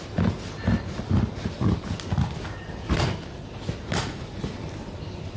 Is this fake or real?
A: real